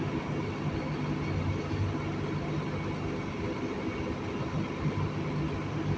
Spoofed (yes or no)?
no